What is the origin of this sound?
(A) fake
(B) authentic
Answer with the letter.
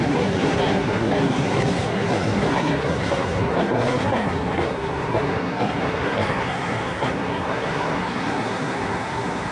A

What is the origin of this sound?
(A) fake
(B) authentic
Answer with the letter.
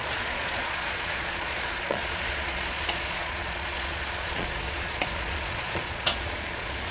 A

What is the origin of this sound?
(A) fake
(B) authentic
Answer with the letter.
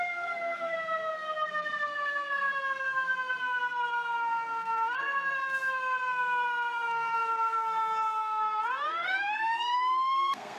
A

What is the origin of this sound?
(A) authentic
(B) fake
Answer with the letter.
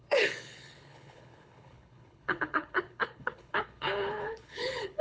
B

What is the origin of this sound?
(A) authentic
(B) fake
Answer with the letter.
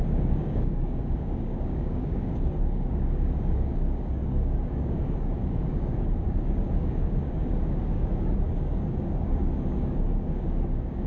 B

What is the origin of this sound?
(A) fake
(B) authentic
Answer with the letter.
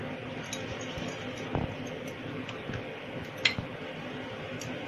B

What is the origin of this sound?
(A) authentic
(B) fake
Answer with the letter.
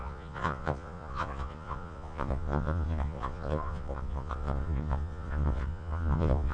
B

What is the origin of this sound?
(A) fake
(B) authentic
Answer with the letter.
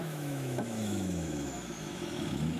A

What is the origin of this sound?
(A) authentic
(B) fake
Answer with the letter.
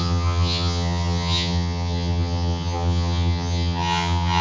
B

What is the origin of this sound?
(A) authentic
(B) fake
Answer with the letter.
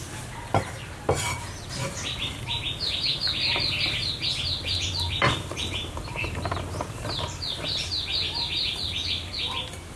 B